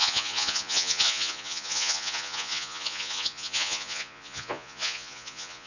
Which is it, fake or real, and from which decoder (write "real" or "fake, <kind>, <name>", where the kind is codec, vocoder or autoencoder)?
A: fake, vocoder, Vocos